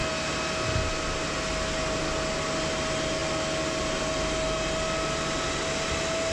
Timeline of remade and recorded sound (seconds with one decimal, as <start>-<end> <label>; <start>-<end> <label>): 0.0-6.3 recorded